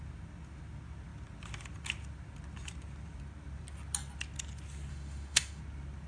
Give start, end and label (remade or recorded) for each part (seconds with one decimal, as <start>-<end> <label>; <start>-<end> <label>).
0.0-4.9 recorded; 4.9-5.6 remade; 5.6-6.1 recorded